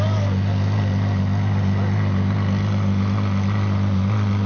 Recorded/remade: recorded